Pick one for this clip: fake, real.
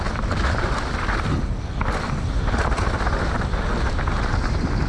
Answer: real